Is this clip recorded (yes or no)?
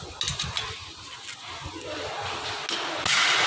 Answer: yes